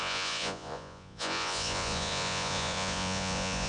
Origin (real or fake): fake